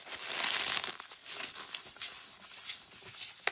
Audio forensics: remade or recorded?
recorded